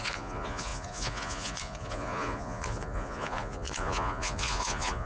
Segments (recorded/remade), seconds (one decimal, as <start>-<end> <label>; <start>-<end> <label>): 0.0-5.1 remade